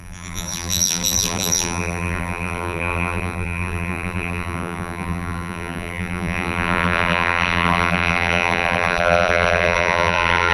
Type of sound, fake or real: fake